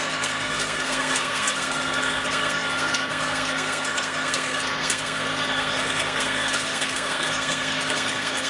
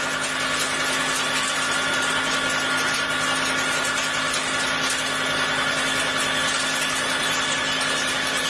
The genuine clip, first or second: second